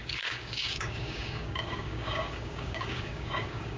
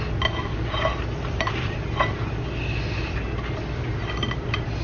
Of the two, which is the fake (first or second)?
first